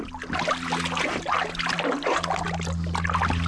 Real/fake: real